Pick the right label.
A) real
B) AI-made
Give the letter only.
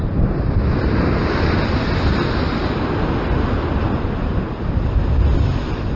A